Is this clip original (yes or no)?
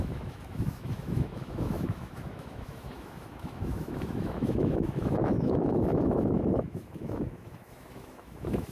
no